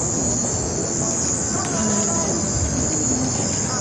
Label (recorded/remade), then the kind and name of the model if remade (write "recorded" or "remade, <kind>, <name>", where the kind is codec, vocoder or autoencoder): recorded